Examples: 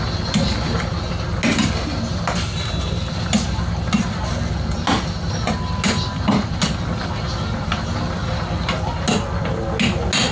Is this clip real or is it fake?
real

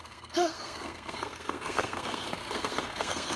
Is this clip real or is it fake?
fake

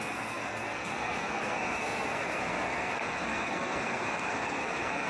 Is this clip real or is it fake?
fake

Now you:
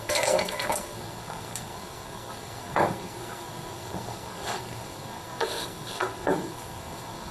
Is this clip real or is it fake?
fake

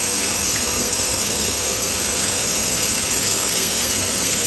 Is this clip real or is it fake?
fake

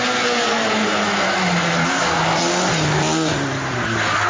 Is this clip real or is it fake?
real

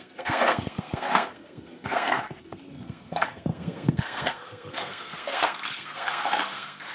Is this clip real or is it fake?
fake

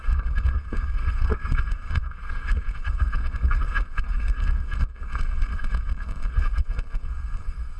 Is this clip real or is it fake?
fake